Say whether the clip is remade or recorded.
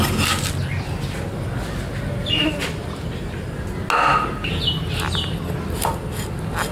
recorded